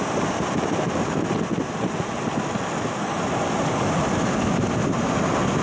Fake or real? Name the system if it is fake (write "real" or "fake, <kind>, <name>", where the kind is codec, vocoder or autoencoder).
real